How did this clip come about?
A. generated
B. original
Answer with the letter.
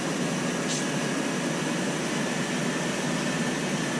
B